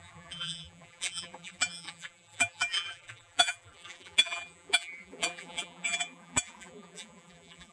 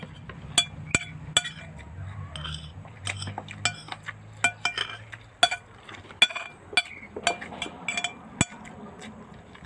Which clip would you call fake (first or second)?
first